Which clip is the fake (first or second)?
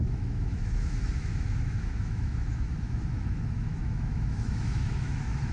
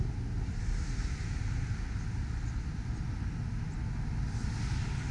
first